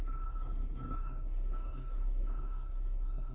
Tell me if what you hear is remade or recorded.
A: remade